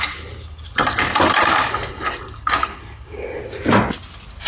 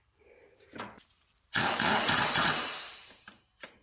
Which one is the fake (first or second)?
second